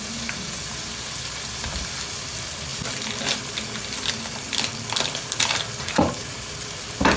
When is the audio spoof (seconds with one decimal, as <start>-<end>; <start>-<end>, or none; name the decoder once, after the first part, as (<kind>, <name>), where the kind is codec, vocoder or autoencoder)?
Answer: none